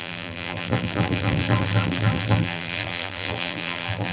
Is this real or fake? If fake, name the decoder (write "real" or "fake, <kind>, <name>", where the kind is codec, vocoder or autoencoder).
fake, vocoder, BigVGAN v2